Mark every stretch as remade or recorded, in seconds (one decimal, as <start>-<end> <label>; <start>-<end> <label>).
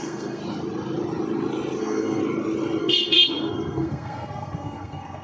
0.0-0.4 remade; 0.4-1.8 recorded; 1.8-2.2 remade; 2.2-2.8 recorded; 2.8-5.2 remade